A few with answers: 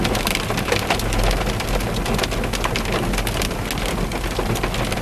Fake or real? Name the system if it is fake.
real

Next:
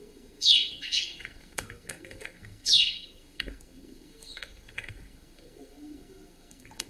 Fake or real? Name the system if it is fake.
fake, codec, SNAC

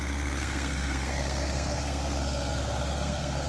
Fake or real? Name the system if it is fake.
fake, codec, SNAC